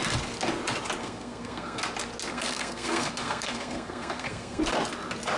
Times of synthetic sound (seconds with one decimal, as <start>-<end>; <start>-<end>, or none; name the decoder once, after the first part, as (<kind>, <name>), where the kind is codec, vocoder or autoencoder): 1.0-1.8 (codec, SNAC); 2.3-4.6